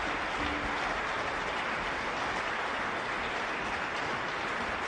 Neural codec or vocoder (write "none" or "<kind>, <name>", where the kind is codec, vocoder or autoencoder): none